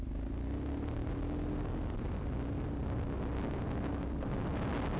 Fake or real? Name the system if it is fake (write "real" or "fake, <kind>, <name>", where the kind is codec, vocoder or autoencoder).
real